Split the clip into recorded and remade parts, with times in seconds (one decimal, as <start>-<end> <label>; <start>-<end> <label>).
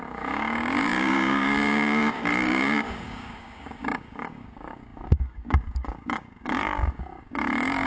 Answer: 0.0-7.9 remade